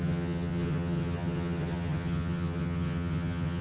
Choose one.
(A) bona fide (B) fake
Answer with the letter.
B